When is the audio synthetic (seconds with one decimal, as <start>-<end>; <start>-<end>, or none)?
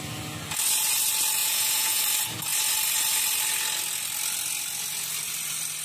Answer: 1.4-2.0